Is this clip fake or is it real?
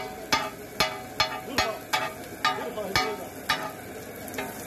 real